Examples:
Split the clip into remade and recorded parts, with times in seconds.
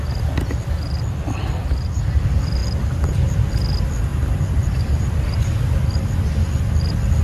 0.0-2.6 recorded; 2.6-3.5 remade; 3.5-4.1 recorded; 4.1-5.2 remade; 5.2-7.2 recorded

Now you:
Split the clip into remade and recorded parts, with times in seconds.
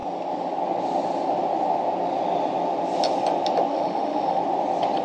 0.0-3.7 recorded; 3.7-4.4 remade; 4.4-5.0 recorded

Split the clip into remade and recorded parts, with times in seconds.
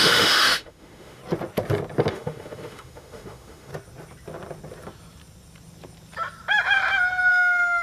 0.0-1.2 remade; 1.2-2.1 recorded; 2.1-3.7 remade; 3.7-7.3 recorded; 7.3-7.8 remade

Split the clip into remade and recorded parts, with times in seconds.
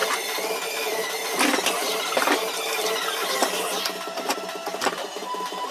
0.0-4.7 recorded; 4.7-5.7 remade